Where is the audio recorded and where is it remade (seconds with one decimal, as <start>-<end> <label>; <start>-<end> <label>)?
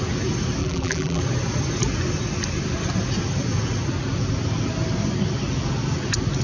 0.0-0.6 recorded; 0.6-1.2 remade; 1.2-6.4 recorded